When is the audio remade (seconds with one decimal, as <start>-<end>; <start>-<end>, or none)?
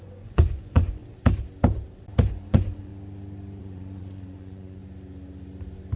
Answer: 0.0-1.0; 2.3-2.9; 3.6-4.8